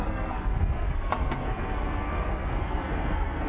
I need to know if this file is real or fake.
fake